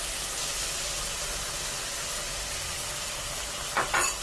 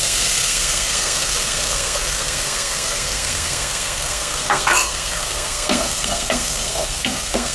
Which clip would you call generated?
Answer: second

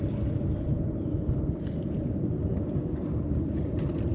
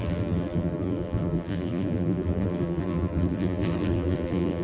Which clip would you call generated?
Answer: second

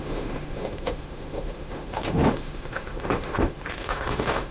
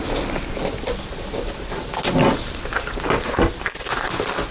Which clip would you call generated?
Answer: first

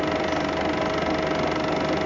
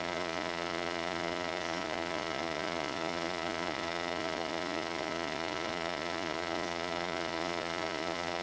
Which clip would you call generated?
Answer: second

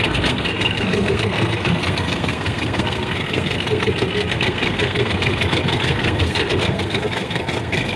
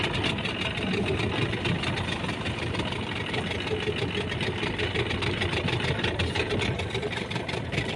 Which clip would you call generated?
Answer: first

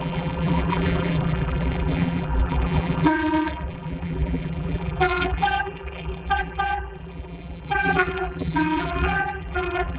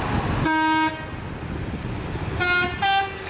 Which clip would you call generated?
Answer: first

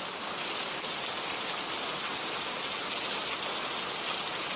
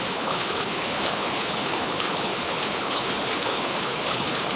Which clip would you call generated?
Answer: second